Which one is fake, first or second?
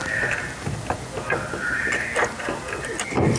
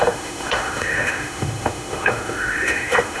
second